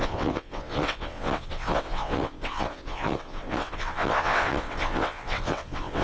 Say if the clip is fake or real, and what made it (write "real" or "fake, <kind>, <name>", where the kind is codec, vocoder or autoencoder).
fake, vocoder, WaveNeXt